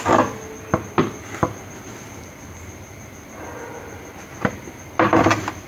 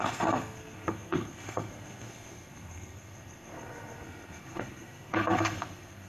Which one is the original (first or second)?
first